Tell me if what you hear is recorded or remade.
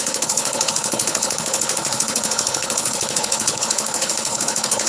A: remade